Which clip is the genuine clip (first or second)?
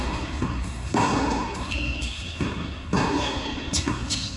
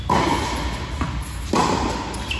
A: second